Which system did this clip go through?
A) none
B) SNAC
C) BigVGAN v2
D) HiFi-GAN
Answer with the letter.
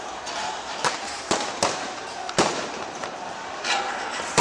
C